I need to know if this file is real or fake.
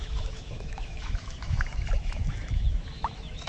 fake